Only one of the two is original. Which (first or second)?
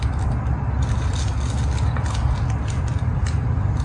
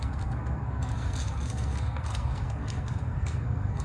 first